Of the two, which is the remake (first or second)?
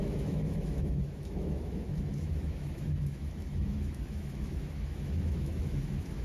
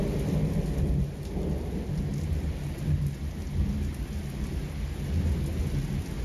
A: first